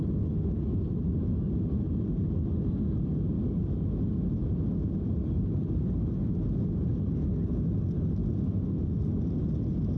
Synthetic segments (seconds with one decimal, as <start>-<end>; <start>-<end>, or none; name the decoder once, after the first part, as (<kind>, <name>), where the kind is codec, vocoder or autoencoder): none